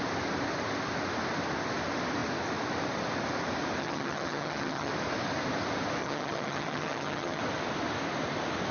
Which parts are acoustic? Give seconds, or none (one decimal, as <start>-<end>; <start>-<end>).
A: 0.0-3.8; 4.9-6.0; 7.4-8.7